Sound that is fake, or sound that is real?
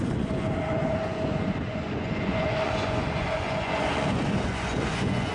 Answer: fake